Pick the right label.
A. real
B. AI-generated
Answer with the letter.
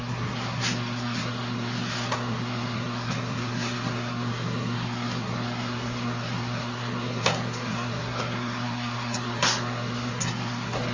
B